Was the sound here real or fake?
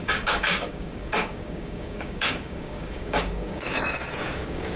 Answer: fake